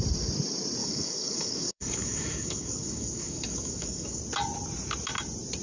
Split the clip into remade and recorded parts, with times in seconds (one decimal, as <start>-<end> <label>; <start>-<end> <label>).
0.0-0.8 recorded; 0.8-4.2 remade; 4.2-5.6 recorded